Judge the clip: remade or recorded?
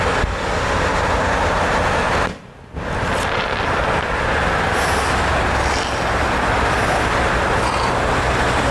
recorded